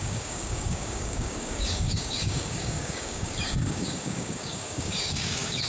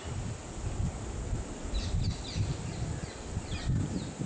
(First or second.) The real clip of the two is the second